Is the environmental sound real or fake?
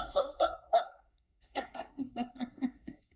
fake